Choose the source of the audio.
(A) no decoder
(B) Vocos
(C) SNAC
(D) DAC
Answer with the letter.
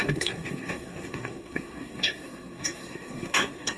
C